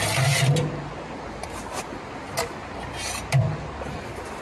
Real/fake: real